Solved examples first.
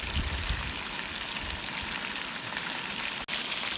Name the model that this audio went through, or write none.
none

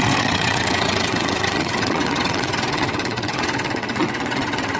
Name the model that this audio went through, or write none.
vocoder, WaveNeXt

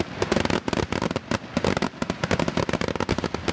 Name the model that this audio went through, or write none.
none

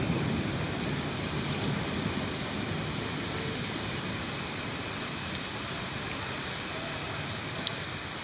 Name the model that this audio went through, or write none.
none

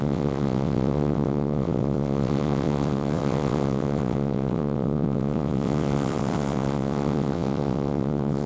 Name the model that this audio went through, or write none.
vocoder, WaveNeXt